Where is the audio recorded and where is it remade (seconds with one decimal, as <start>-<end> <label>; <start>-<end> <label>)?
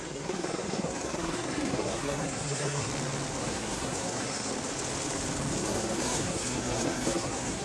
0.0-2.9 remade; 2.9-3.4 recorded; 3.4-4.5 remade; 4.5-5.6 recorded; 5.6-7.6 remade